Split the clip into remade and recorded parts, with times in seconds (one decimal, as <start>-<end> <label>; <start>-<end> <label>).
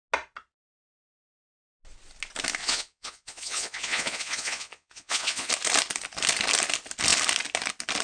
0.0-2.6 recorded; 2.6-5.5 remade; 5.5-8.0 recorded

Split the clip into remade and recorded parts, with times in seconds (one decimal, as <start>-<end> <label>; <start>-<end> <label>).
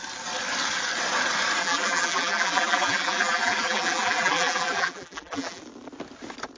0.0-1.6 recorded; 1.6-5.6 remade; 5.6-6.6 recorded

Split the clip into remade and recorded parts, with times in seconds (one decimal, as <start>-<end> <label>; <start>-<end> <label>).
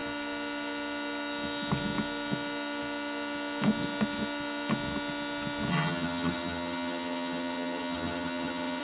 0.0-5.7 recorded; 5.7-8.8 remade